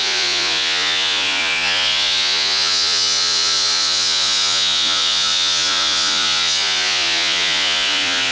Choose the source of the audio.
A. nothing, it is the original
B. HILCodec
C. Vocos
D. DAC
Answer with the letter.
C